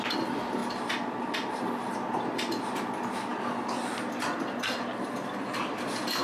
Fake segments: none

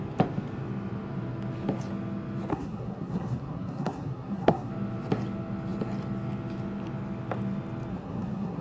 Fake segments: 2.5-4.7 (codec, SNAC); 7.9-8.6

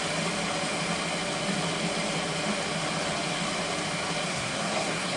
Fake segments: 4.3-5.2 (codec, SNAC)

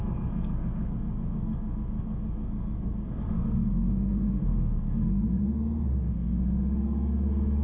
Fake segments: 0.0-5.4 (codec, SNAC); 5.9-7.6

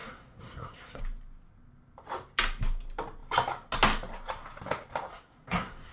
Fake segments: 0.0-1.0 (codec, SNAC); 5.1-5.9

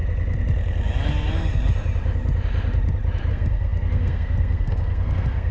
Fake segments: 3.3-5.5 (codec, SNAC)

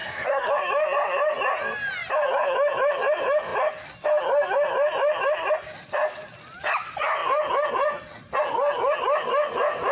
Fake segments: 0.0-0.5 (codec, SNAC)

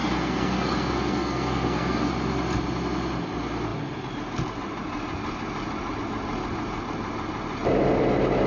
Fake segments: 0.0-2.1 (codec, SNAC)